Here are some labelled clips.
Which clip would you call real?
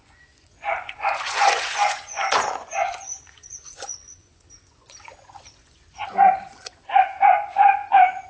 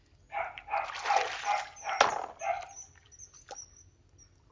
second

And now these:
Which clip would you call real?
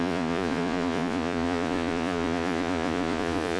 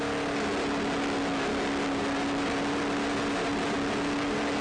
second